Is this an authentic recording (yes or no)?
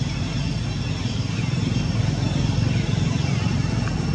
yes